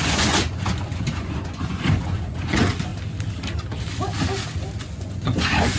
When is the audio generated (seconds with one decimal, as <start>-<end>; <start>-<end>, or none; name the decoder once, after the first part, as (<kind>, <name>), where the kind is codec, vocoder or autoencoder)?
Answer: 0.0-2.9 (vocoder, Vocos); 4.8-5.8